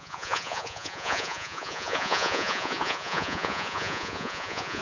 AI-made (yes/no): yes